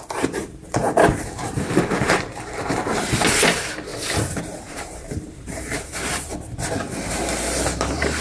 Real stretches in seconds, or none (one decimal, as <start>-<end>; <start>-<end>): 3.9-4.4; 6.3-7.1